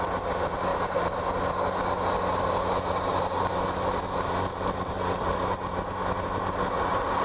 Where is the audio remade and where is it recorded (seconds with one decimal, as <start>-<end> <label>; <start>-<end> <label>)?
0.0-0.7 recorded; 0.7-1.2 remade; 1.2-3.1 recorded; 3.1-6.5 remade; 6.5-7.2 recorded